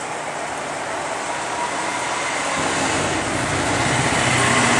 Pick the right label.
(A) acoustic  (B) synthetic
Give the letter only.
A